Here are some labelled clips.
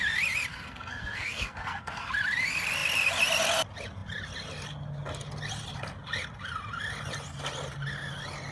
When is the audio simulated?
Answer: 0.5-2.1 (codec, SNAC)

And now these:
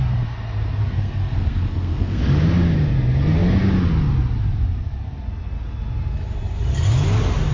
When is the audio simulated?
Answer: 0.8-2.2 (codec, SNAC)

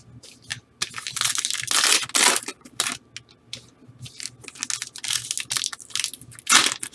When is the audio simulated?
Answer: none

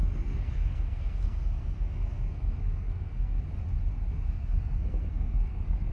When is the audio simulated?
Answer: 0.0-3.4 (codec, SNAC); 4.1-5.9

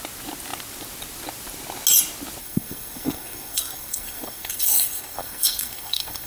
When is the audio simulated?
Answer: 2.4-6.3 (codec, SNAC)

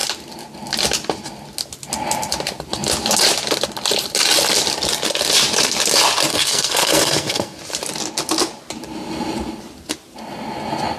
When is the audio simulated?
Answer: 6.3-7.6 (codec, SNAC)

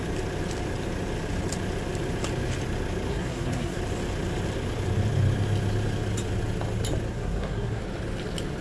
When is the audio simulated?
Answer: 3.1-3.8 (codec, SNAC); 7.1-7.8

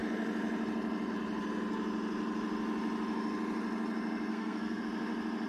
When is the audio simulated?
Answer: 4.3-4.8 (codec, SNAC)